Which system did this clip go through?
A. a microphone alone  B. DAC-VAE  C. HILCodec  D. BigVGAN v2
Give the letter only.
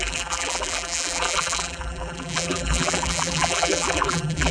D